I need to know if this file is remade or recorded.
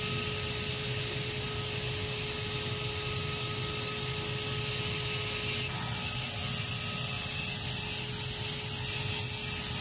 recorded